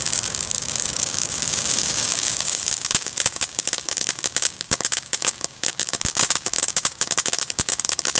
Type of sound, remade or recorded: remade